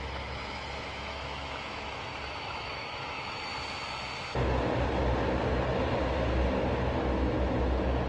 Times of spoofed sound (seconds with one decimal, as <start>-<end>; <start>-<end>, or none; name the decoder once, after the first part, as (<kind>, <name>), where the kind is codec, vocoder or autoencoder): 0.0-3.5 (autoencoder, DAC-VAE)